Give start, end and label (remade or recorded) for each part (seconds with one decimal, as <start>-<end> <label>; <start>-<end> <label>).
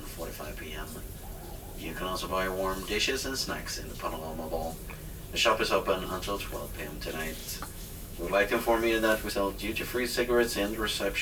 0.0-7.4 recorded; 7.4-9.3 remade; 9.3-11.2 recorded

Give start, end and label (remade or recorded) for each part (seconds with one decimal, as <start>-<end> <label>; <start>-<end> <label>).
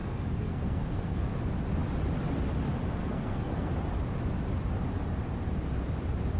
0.0-1.3 remade; 1.3-3.0 recorded; 3.0-3.7 remade; 3.7-6.4 recorded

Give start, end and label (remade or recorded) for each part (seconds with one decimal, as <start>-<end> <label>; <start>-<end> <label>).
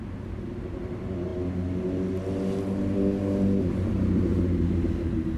0.0-5.4 recorded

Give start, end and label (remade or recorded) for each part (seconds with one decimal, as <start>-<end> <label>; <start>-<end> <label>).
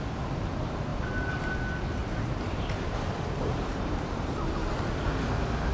0.0-2.0 recorded; 2.0-4.7 remade; 4.7-5.7 recorded